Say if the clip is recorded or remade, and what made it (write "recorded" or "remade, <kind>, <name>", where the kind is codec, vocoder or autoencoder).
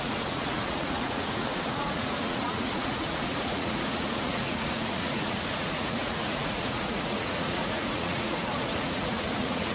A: remade, vocoder, Vocos